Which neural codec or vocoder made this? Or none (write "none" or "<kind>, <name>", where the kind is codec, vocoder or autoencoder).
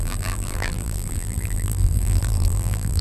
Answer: vocoder, BigVGAN v2